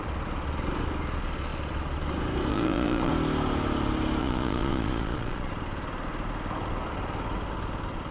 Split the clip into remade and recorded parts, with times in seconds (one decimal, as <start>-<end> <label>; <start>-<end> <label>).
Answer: 0.0-2.5 recorded; 2.5-3.1 remade; 3.1-4.2 recorded; 4.2-5.5 remade; 5.5-8.1 recorded